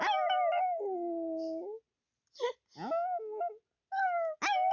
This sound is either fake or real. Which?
real